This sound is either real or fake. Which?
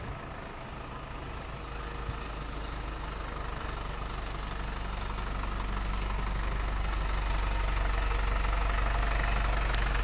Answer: real